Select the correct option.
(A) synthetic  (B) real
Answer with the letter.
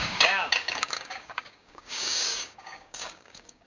A